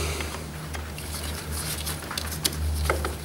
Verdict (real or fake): real